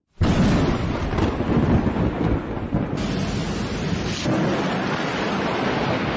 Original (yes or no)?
yes